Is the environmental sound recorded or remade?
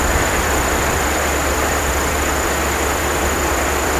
remade